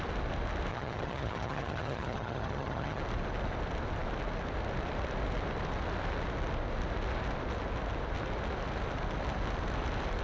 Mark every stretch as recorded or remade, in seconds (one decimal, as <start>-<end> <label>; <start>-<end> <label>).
0.0-0.7 recorded; 0.7-3.0 remade; 3.0-10.2 recorded